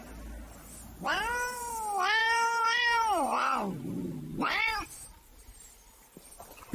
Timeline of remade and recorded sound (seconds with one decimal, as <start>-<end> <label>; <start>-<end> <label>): 0.0-1.1 recorded; 1.1-1.7 remade; 1.7-2.2 recorded; 2.2-5.7 remade; 5.7-6.7 recorded